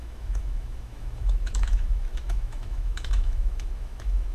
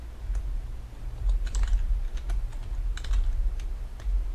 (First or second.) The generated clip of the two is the first